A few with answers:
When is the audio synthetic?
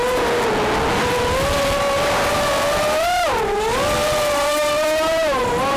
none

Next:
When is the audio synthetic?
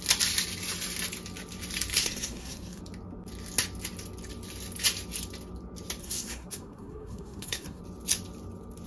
1.9-2.8 (codec, SNAC); 6.0-7.8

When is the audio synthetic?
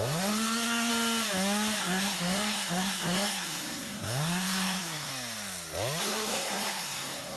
0.0-0.9 (codec, SNAC); 1.8-5.1; 6.0-7.4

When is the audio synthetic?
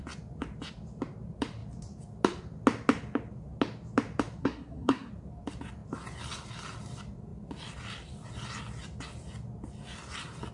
4.4-5.1 (codec, SNAC)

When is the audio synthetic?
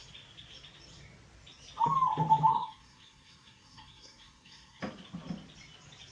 2.5-4.8 (codec, SNAC)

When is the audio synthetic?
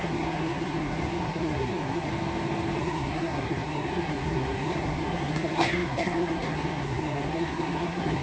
0.0-2.1 (codec, SNAC); 2.8-8.2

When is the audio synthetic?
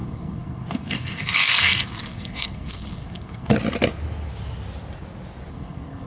0.0-3.5 (codec, SNAC); 5.5-6.1